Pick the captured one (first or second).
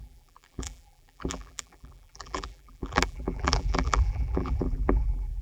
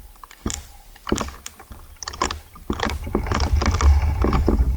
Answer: second